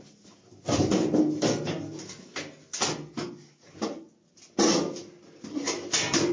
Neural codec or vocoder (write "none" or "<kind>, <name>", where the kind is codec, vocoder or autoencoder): none